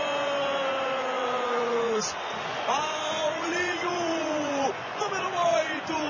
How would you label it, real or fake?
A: fake